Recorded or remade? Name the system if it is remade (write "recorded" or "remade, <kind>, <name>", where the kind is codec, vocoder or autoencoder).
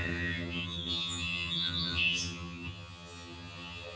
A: remade, vocoder, HiFi-GAN